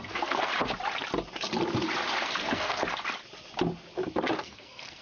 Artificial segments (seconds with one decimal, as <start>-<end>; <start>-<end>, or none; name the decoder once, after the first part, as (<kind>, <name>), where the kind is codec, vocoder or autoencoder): 0.0-0.5 (codec, SNAC); 2.2-2.8; 4.4-5.0